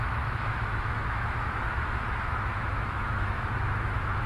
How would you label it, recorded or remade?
remade